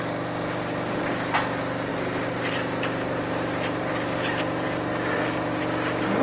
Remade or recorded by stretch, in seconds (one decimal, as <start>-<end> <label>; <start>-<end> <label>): 0.0-1.9 recorded; 1.9-5.6 remade; 5.6-6.2 recorded